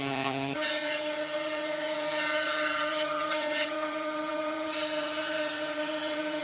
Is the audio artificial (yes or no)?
yes